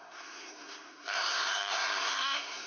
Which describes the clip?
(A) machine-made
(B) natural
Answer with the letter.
A